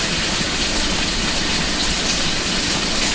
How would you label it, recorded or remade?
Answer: recorded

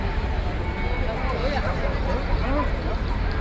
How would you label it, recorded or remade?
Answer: recorded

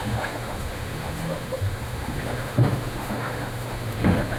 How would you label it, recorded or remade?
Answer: remade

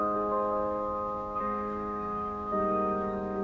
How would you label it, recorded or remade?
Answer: remade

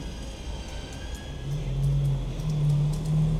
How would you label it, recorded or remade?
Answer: recorded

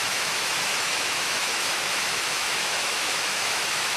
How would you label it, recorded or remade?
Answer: remade